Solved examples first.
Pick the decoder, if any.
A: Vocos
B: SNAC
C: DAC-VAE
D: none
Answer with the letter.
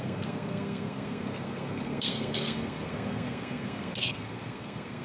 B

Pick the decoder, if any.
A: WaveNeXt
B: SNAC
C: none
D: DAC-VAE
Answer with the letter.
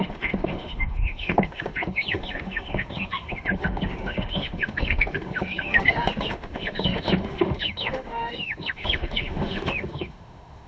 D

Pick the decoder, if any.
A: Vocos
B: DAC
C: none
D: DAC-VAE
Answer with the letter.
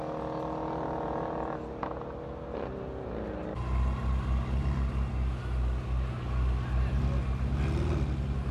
C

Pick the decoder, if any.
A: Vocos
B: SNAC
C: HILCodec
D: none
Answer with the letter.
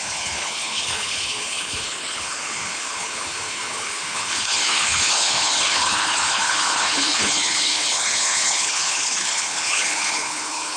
C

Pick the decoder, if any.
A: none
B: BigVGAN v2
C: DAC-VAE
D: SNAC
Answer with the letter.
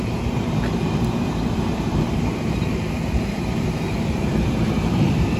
B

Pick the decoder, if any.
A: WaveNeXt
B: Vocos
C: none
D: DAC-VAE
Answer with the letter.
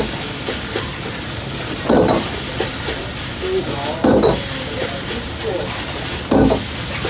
C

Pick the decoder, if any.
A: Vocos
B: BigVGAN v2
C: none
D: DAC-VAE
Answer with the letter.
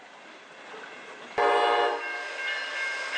C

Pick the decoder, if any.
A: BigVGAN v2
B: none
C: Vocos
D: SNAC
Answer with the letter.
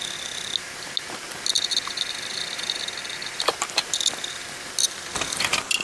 B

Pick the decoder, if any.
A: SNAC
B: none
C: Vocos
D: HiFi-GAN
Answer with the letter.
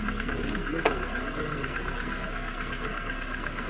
A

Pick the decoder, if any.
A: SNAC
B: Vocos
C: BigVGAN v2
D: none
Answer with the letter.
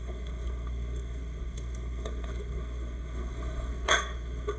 A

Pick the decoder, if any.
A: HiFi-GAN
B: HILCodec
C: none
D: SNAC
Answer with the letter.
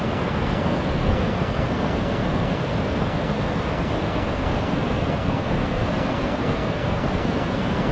D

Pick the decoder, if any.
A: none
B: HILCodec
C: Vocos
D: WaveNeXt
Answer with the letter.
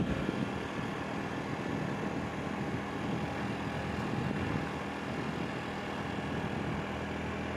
A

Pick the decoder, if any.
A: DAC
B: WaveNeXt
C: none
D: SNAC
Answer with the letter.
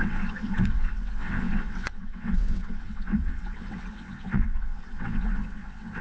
B